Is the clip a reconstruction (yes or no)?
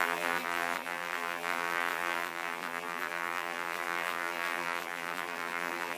yes